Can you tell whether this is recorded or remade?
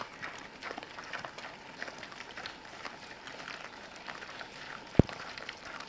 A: recorded